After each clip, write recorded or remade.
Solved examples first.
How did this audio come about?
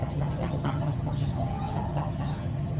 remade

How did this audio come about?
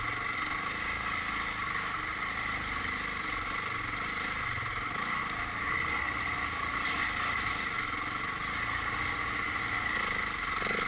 recorded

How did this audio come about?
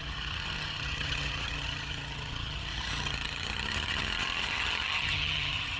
remade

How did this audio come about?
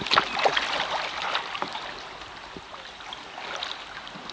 recorded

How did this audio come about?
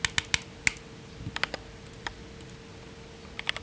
recorded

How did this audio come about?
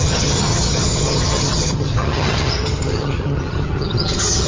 remade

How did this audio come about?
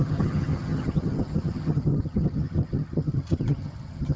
remade